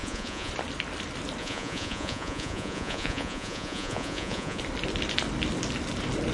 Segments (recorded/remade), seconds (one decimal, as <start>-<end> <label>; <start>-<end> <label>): 0.0-0.5 remade; 0.5-1.4 recorded; 1.4-4.6 remade; 4.6-6.3 recorded